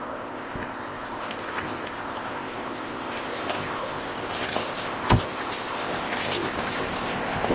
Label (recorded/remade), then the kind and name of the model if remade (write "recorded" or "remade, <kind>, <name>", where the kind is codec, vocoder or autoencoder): remade, codec, ZipCodec